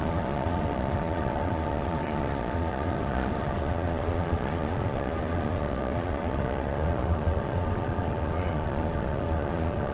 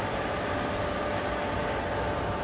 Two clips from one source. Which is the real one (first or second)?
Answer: second